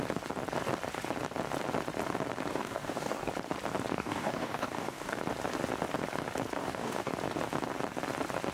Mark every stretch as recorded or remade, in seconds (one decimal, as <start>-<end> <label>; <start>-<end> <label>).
0.0-2.5 recorded; 2.5-3.3 remade; 3.3-3.9 recorded; 3.9-5.2 remade; 5.2-6.6 recorded; 6.6-7.1 remade; 7.1-8.5 recorded